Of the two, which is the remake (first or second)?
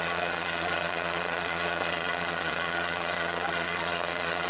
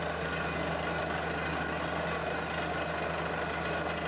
first